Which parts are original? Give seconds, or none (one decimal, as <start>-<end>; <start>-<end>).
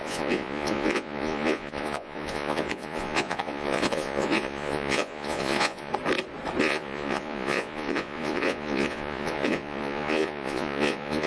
5.9-6.6